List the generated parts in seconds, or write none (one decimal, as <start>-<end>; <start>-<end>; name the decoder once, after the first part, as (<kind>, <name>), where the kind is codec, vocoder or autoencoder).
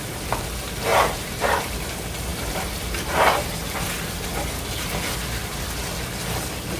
0.9-1.6 (vocoder, BigVGAN v2)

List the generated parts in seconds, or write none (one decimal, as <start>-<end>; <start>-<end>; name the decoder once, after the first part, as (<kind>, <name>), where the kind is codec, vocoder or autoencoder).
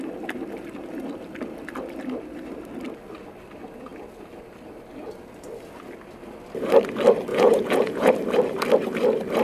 7.3-8.1 (vocoder, Vocos)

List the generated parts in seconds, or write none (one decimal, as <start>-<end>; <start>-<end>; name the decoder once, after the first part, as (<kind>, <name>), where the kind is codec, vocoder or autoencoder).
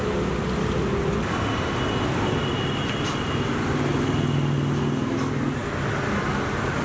none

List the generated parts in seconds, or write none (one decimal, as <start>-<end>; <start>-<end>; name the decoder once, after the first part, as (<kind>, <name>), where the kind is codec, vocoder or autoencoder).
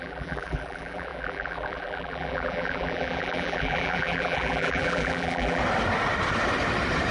0.0-5.6 (vocoder, BigVGAN v2)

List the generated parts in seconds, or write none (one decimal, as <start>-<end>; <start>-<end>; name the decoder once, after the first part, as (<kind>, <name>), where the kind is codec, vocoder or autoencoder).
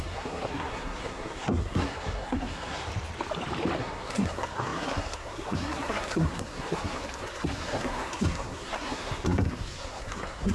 0.0-2.9 (codec, SNAC); 3.8-10.5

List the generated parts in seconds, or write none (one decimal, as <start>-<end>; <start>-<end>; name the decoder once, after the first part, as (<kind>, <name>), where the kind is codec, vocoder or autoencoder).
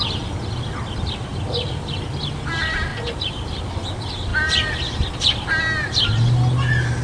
1.3-2.2 (vocoder, BigVGAN v2); 2.9-3.6; 4.3-5.3